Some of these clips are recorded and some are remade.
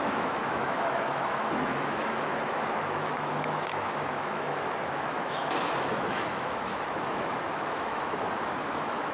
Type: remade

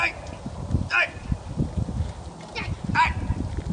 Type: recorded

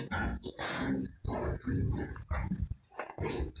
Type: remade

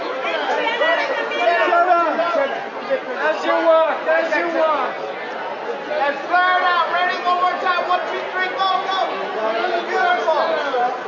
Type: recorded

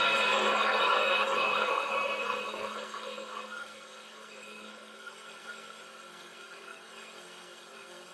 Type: remade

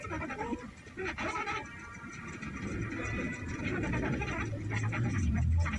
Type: recorded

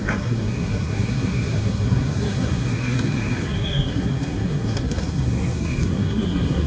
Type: remade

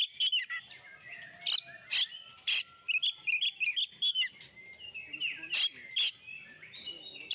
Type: recorded